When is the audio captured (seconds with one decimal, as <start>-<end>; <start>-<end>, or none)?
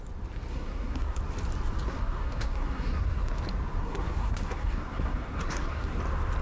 0.0-0.5; 1.2-1.9; 3.4-3.8; 6.0-6.4